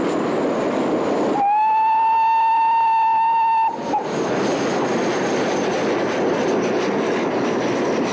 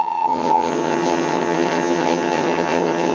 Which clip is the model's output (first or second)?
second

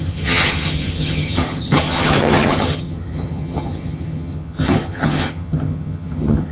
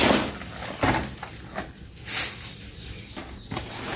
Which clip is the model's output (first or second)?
first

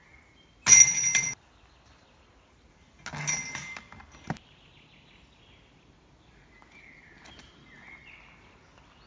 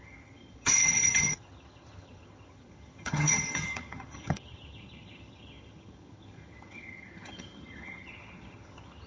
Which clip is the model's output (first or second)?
second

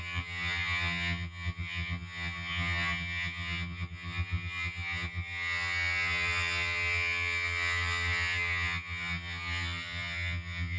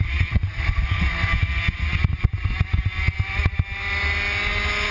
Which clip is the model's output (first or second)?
first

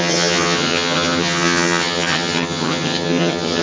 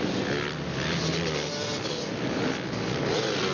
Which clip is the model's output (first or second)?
first